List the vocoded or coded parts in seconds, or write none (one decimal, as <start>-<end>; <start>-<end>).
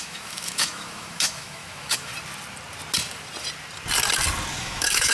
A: 0.0-2.1; 4.6-5.1